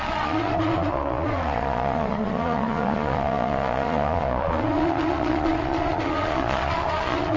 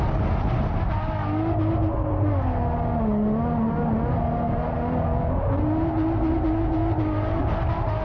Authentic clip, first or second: second